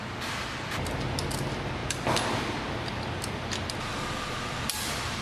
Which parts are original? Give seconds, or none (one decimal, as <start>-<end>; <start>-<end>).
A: 0.0-5.2